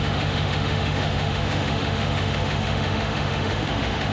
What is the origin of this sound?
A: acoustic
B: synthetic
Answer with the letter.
B